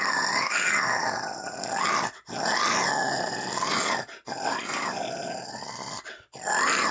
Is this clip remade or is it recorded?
recorded